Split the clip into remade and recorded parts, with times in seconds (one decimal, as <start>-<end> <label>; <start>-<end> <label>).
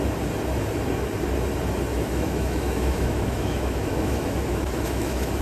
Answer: 0.0-1.9 recorded; 1.9-5.4 remade